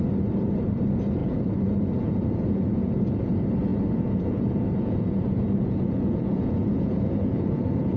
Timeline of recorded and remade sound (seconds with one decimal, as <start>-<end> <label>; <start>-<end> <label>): 0.0-1.2 recorded; 1.2-3.3 remade; 3.3-3.7 recorded; 3.7-8.0 remade